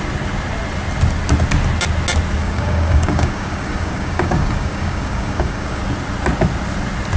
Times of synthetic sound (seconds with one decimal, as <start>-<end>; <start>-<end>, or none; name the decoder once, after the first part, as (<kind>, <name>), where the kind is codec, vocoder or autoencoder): 2.4-5.8 (codec, DAC)